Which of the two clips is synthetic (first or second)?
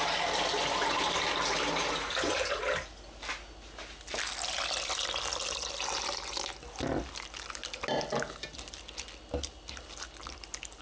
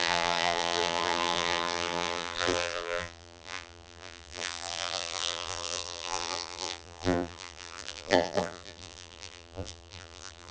second